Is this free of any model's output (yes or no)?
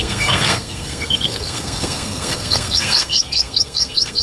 no